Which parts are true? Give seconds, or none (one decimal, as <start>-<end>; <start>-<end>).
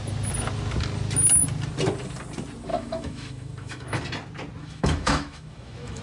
0.0-2.7; 4.0-4.6